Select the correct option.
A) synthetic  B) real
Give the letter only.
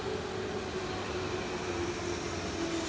B